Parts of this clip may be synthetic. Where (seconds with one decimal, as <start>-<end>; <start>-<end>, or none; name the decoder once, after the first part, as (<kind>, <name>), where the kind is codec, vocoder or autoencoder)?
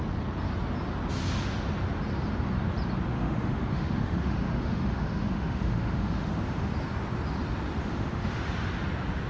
3.1-6.7 (autoencoder, DAC-VAE); 7.8-8.5